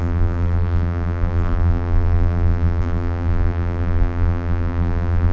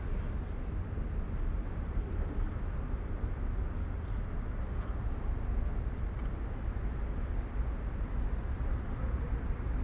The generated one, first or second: first